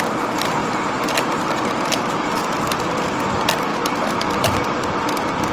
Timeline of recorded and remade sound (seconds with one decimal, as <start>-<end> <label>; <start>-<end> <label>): 0.0-0.6 remade; 0.6-2.0 recorded; 2.0-3.7 remade; 3.7-4.3 recorded; 4.3-5.5 remade